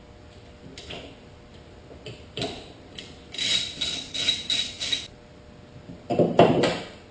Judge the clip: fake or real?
real